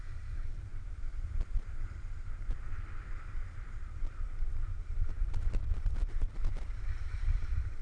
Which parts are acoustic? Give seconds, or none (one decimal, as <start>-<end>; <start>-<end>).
none